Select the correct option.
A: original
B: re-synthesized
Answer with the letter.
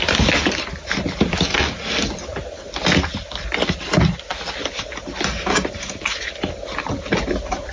A